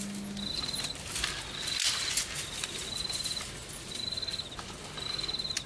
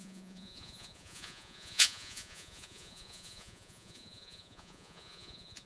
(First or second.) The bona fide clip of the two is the first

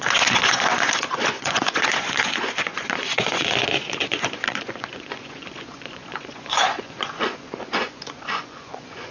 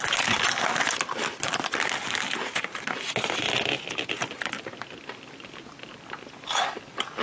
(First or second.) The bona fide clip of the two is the second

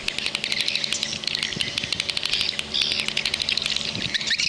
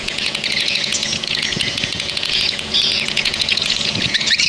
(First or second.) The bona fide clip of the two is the first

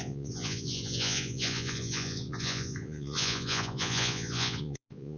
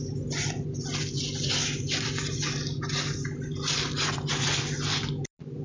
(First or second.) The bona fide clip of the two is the second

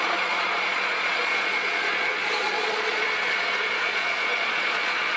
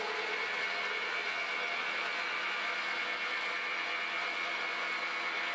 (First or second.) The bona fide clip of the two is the second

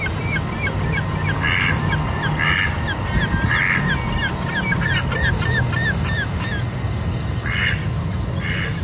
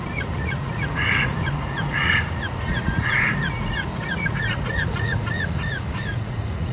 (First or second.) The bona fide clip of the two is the first